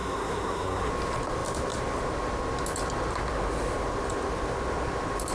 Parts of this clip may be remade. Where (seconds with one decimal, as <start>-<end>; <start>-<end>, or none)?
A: 0.0-0.9